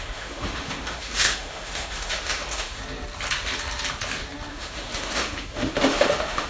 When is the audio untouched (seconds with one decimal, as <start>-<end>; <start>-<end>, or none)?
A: 2.8-4.5